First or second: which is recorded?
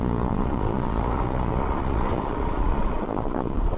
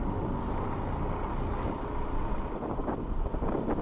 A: second